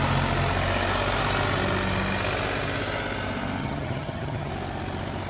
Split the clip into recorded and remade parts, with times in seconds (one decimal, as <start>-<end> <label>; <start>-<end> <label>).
0.0-3.6 recorded; 3.6-4.5 remade; 4.5-5.3 recorded